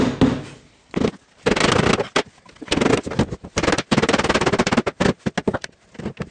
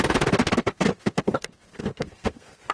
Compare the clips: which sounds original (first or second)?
first